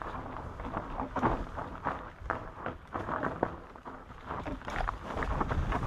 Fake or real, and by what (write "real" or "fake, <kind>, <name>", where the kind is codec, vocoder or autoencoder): real